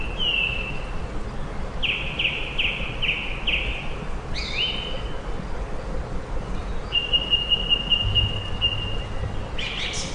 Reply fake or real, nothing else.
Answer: real